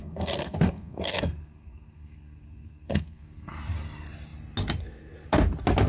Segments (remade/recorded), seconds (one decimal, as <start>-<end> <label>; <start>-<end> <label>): 0.0-3.5 remade; 3.5-5.9 recorded